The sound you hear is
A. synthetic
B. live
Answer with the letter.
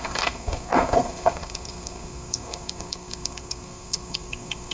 A